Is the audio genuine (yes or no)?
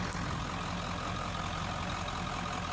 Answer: yes